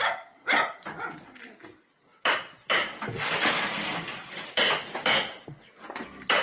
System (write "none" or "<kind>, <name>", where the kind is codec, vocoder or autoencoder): none